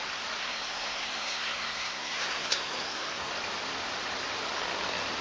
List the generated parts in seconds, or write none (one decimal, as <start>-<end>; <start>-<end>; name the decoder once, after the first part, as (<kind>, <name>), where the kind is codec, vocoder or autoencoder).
0.4-3.3 (codec, SNAC)